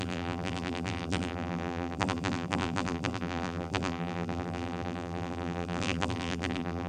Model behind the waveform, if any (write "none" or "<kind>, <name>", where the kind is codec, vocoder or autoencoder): vocoder, BigVGAN v2